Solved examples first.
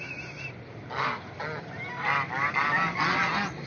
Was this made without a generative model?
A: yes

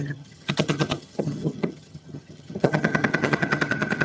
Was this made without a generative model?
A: no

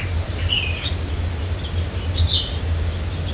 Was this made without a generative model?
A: yes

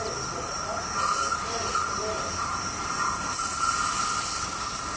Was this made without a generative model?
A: yes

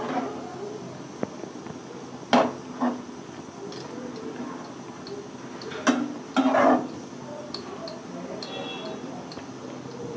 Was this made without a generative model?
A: yes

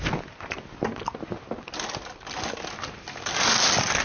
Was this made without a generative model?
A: yes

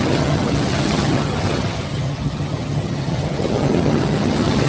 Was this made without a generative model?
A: no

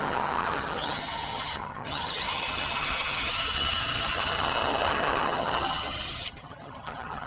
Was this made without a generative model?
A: no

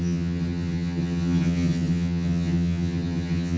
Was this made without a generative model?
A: no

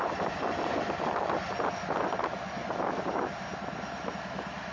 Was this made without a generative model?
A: yes